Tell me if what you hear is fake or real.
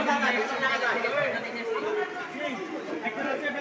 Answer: real